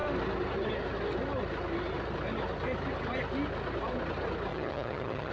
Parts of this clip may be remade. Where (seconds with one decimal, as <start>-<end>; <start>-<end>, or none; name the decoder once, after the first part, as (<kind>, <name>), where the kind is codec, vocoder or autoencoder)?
4.5-5.3 (vocoder, HiFi-GAN)